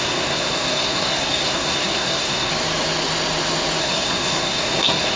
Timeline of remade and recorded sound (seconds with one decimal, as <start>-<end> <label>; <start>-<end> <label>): 0.0-2.5 remade; 2.5-3.8 recorded; 3.8-5.2 remade